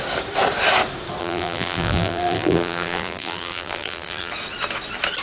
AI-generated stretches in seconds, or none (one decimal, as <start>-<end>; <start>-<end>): 1.2-4.3